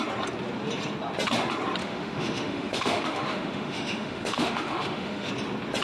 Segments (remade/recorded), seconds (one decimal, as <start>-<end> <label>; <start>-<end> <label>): 0.0-1.8 recorded; 1.8-5.3 remade; 5.3-5.8 recorded